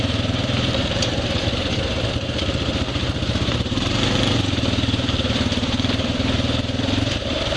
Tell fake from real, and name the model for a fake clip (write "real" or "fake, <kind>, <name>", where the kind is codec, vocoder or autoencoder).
fake, vocoder, BigVGAN v2